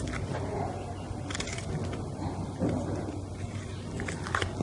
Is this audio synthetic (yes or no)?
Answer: no